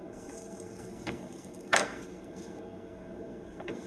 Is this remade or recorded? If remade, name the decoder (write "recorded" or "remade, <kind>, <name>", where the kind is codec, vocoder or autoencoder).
remade, codec, SNAC